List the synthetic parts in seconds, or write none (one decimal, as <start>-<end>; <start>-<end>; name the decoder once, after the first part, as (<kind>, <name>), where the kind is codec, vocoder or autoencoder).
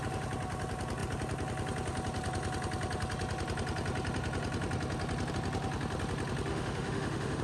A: 6.5-7.4 (autoencoder, DAC-VAE)